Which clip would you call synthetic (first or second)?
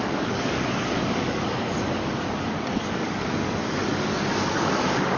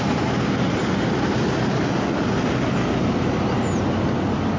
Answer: first